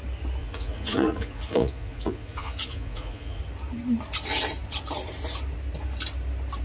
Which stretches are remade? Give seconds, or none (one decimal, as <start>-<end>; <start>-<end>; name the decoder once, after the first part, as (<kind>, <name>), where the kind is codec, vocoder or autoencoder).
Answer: 0.4-3.4 (vocoder, Vocos)